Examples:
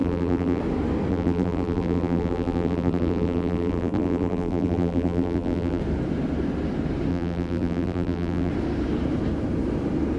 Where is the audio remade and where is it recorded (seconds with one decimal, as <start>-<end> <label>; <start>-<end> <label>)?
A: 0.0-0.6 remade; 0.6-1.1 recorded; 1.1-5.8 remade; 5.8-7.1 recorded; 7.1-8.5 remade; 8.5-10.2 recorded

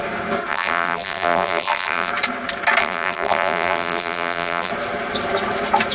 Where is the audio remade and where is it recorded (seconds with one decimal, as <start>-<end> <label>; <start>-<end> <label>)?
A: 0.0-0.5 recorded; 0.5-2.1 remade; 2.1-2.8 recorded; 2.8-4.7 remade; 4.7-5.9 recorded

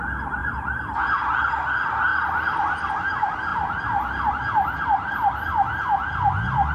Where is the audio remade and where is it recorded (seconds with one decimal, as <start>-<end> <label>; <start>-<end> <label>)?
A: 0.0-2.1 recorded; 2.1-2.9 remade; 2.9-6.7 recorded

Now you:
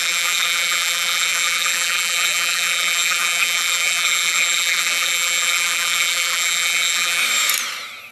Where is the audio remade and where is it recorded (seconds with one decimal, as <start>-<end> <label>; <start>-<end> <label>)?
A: 0.0-7.2 remade; 7.2-8.1 recorded

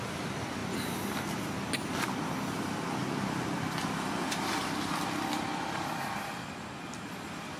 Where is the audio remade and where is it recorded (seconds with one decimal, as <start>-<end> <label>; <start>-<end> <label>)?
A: 0.0-0.6 recorded; 0.6-1.3 remade; 1.3-3.0 recorded; 3.0-5.9 remade; 5.9-7.6 recorded

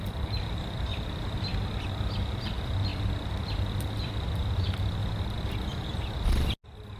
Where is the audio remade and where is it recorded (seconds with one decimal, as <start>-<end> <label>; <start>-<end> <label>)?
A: 0.0-0.9 recorded; 0.9-1.6 remade; 1.6-2.9 recorded; 2.9-4.1 remade; 4.1-5.0 recorded; 5.0-6.0 remade; 6.0-7.0 recorded